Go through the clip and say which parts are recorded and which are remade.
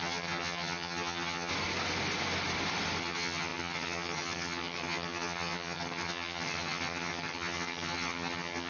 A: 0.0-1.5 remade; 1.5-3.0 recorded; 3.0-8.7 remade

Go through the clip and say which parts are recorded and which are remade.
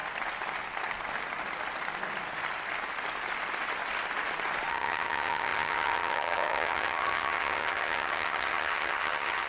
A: 0.0-4.7 recorded; 4.7-9.5 remade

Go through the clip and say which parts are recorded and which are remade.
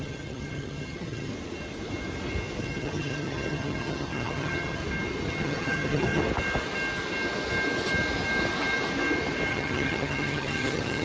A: 0.0-1.3 remade; 1.3-2.6 recorded; 2.6-4.8 remade; 4.8-5.3 recorded; 5.3-6.2 remade; 6.2-9.5 recorded; 9.5-11.0 remade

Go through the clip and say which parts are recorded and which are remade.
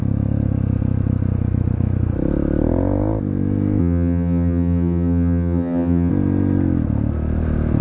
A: 0.0-3.8 recorded; 3.8-6.1 remade; 6.1-7.8 recorded